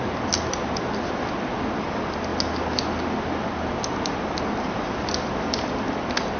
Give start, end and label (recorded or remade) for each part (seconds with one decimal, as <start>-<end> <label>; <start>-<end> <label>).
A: 0.0-6.4 recorded